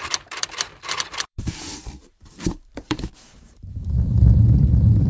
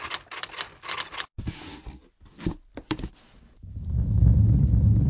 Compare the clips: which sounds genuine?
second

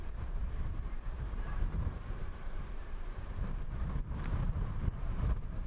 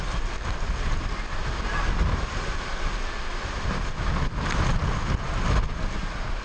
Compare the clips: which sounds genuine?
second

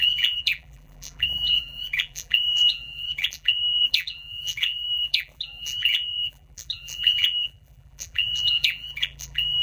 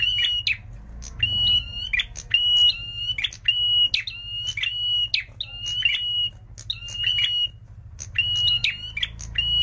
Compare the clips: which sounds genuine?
second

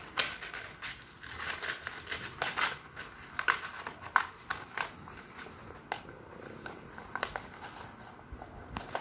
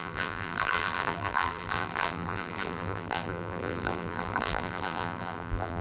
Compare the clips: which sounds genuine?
first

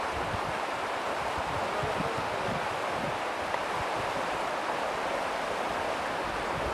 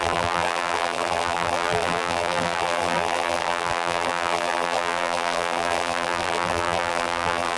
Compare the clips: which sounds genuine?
first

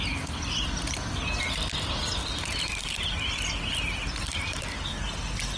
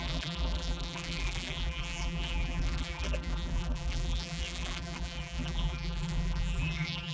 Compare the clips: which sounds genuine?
first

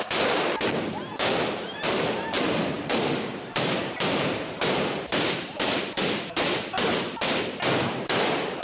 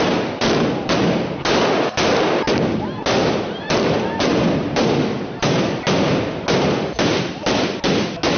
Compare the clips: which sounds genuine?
second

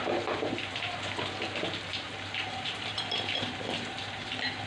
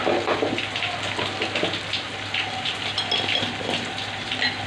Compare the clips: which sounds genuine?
second